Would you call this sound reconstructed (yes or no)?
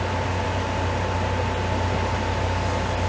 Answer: no